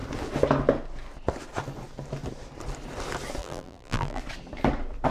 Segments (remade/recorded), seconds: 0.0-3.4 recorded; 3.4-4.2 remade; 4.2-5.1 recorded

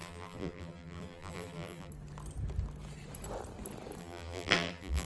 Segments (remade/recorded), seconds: 0.0-1.9 remade; 1.9-4.0 recorded; 4.0-5.1 remade